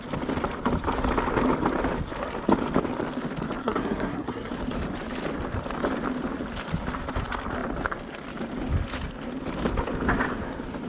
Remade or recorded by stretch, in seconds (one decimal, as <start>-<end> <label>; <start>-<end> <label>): 0.0-3.6 recorded; 3.6-4.5 remade; 4.5-10.9 recorded